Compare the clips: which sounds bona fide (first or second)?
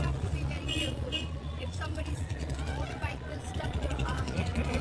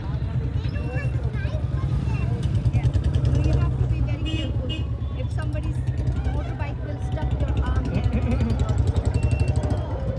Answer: second